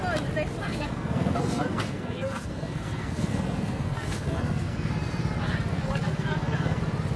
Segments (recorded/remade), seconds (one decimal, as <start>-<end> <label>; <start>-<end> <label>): 0.0-0.6 recorded; 0.6-4.9 remade; 4.9-5.7 recorded; 5.7-6.8 remade; 6.8-7.2 recorded